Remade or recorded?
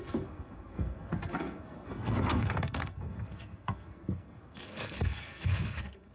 remade